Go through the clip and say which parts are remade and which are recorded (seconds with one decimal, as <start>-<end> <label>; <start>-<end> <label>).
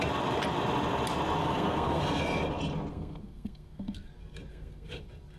0.0-1.4 recorded; 1.4-2.0 remade; 2.0-2.9 recorded; 2.9-4.1 remade; 4.1-4.5 recorded; 4.5-5.0 remade; 5.0-5.4 recorded